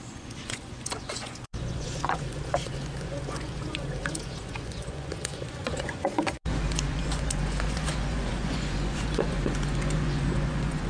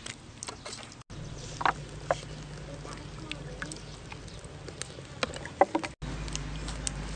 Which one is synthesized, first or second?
first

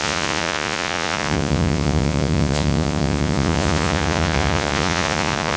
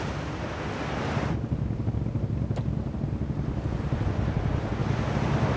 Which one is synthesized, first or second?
first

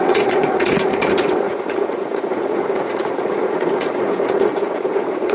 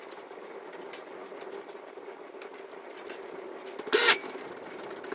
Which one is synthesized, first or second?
first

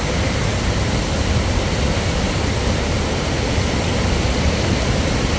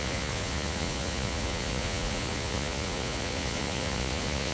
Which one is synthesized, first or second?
second